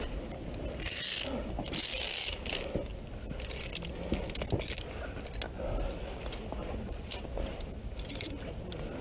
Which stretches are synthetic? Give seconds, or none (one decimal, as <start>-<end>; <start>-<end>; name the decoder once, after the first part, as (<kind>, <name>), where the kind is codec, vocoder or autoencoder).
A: 6.6-7.1 (vocoder, Vocos)